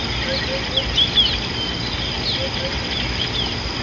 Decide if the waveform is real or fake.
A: real